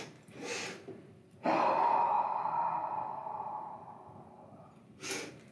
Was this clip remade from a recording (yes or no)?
yes